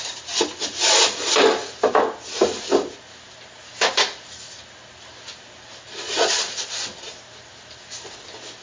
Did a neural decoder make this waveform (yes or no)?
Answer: no